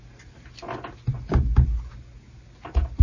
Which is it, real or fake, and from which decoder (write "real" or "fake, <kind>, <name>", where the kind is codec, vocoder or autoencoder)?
real